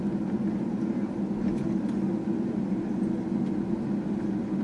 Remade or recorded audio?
recorded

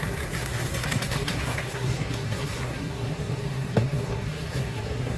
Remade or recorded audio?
remade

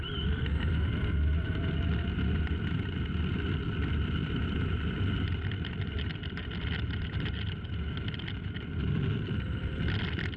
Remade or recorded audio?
remade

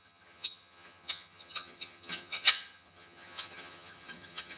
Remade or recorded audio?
remade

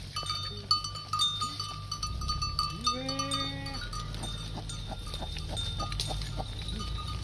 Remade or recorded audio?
recorded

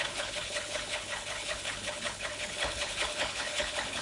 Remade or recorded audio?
remade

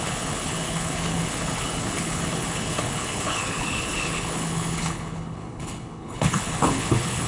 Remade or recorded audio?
remade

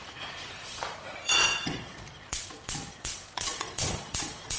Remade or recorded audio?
remade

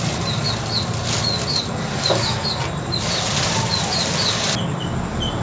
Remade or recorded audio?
recorded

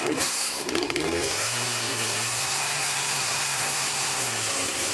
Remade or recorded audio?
remade